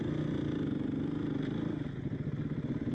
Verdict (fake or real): real